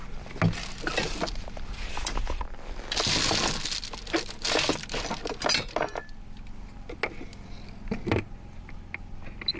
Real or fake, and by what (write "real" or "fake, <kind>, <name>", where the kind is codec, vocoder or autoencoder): real